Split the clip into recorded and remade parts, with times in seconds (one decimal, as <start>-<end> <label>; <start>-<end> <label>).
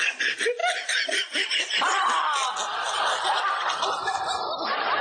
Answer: 0.0-5.0 recorded